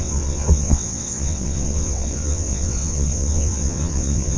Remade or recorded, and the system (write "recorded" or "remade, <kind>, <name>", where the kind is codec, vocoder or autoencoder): remade, vocoder, WaveNeXt